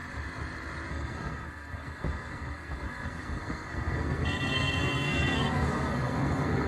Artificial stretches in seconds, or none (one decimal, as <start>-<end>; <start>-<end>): 0.9-6.7